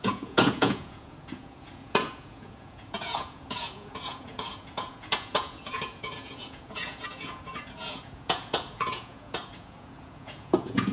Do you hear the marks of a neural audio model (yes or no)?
yes